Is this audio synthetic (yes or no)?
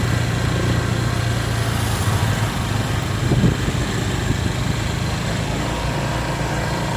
no